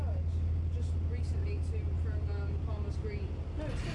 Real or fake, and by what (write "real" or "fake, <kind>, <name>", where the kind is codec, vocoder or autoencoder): real